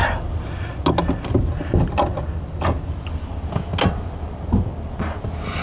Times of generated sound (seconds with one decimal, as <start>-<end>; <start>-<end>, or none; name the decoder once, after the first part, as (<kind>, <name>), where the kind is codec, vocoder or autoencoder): none